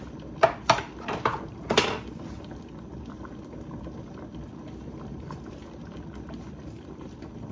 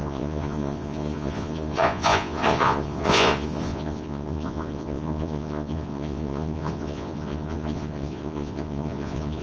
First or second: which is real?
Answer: first